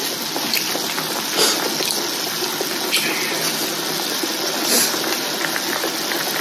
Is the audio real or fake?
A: real